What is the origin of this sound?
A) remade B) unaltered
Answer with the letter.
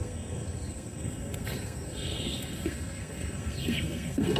A